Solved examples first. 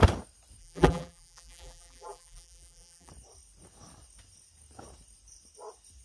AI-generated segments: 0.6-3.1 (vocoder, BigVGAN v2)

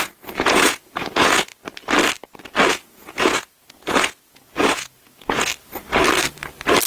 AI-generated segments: 0.0-1.5 (vocoder, Vocos); 2.7-5.5

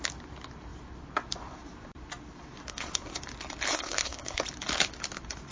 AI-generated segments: 2.7-3.2 (codec, SNAC); 3.7-4.4

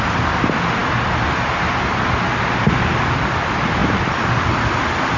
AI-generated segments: none

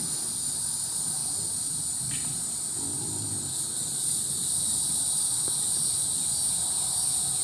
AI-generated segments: 1.2-3.2 (vocoder, BigVGAN v2); 3.7-6.3

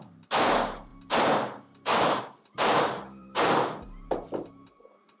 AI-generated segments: 0.0-5.2 (vocoder, BigVGAN v2)

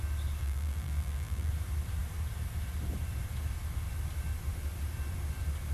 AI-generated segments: 0.4-1.5 (vocoder, BigVGAN v2)

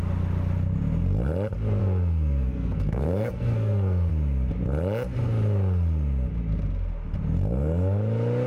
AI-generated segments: 1.8-4.1 (codec, SNAC)